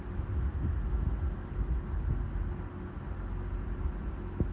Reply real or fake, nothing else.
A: real